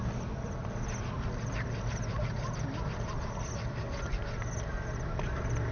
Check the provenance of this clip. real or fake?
real